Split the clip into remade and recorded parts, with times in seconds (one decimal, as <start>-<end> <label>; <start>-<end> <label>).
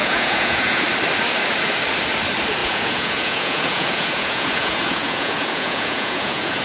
0.0-0.8 remade; 0.8-2.6 recorded; 2.6-6.6 remade